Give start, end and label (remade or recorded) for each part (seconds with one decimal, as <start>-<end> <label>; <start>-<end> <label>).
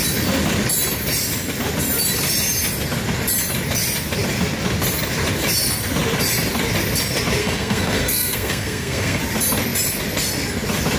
0.0-7.4 recorded; 7.4-9.2 remade; 9.2-11.0 recorded